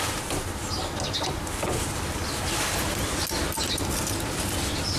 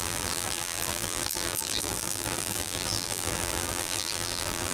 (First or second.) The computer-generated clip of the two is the second